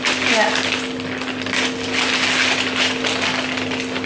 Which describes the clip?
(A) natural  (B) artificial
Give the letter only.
A